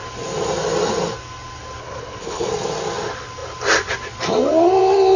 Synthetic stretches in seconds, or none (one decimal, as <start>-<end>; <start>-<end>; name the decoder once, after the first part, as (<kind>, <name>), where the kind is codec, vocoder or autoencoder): 1.8-2.5 (codec, HILCodec)